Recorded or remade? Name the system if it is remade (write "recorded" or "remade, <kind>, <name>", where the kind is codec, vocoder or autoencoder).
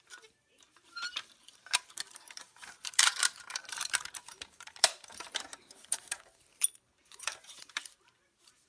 remade, vocoder, BigVGAN v2